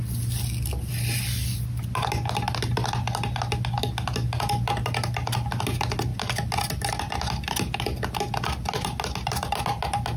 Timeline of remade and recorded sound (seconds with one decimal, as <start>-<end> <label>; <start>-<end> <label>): 0.0-10.2 recorded